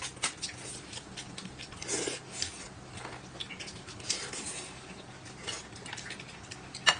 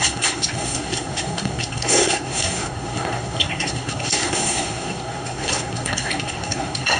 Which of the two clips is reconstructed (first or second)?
second